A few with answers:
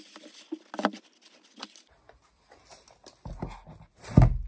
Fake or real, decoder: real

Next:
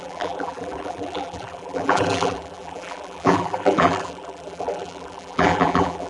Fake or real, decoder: fake, vocoder, BigVGAN v2